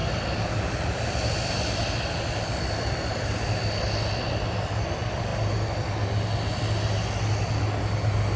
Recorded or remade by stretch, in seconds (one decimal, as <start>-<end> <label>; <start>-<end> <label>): 0.0-8.4 recorded